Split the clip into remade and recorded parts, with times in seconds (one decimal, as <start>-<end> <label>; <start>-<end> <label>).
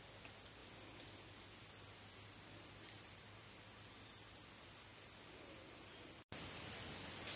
0.0-7.4 recorded